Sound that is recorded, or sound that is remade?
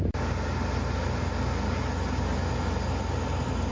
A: recorded